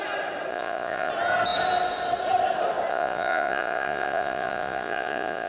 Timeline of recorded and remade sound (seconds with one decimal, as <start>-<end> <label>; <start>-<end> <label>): 0.0-0.5 recorded; 0.5-1.1 remade; 1.1-2.9 recorded; 2.9-5.5 remade